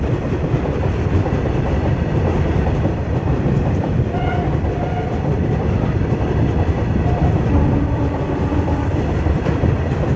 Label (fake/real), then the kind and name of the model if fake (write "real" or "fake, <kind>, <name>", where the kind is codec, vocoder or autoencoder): fake, vocoder, BigVGAN v2